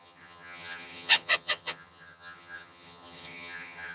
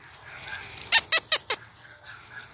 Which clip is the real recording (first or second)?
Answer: second